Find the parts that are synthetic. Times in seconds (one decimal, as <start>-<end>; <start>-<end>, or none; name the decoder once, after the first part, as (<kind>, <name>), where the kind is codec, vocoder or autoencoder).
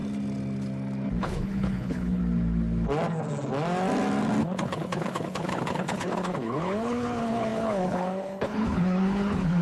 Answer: 1.2-2.2 (codec, HILCodec); 4.4-9.6